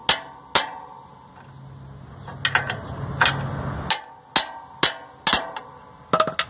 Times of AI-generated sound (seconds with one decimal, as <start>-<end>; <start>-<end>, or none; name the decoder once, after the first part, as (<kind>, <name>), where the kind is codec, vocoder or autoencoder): none